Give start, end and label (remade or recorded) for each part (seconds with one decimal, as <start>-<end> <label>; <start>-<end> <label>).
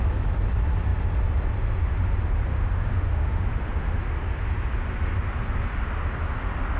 0.0-2.5 recorded; 2.5-4.0 remade; 4.0-6.8 recorded